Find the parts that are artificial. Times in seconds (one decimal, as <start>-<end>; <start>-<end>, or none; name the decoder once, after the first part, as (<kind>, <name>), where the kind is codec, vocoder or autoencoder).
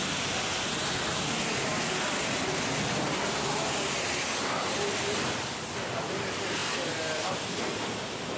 none